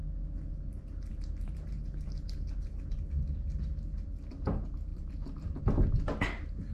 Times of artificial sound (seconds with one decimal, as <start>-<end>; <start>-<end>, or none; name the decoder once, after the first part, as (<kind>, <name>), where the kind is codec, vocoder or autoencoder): 1.1-1.8 (vocoder, BigVGAN v2); 4.9-5.6